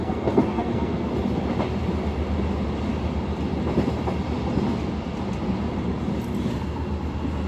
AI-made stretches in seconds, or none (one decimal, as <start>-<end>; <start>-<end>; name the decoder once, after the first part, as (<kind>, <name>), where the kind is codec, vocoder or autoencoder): 0.0-1.1 (codec, SNAC)